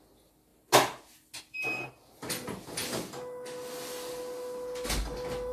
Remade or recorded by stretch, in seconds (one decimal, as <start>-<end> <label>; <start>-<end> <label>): 0.0-5.5 recorded